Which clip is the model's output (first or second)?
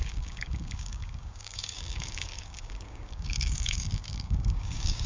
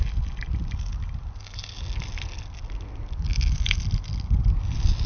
first